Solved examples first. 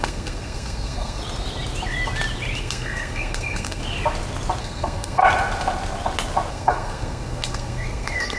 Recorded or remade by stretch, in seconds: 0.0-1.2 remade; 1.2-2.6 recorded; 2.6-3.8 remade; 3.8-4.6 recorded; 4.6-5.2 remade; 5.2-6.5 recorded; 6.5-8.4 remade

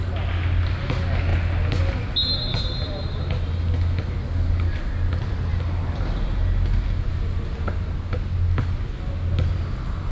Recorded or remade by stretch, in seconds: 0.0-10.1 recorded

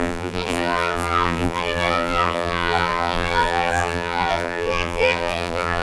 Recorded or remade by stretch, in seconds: 0.0-5.8 remade

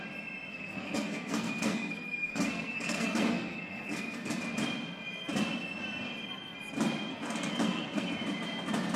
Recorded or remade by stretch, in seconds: 0.0-0.5 recorded; 0.5-4.4 remade; 4.4-7.1 recorded; 7.1-8.1 remade; 8.1-9.0 recorded